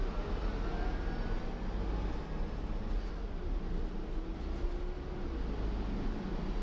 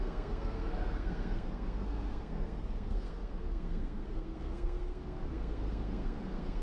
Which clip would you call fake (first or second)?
second